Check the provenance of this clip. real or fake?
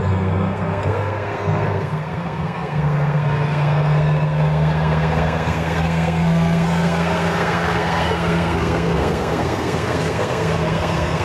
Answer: fake